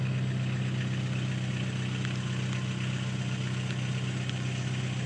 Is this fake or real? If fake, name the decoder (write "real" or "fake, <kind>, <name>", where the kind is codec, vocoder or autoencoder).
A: real